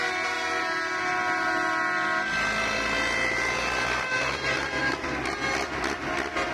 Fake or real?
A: real